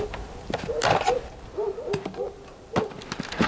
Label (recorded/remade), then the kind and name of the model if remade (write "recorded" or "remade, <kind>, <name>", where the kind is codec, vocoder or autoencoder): recorded